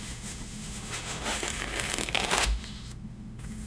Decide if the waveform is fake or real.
fake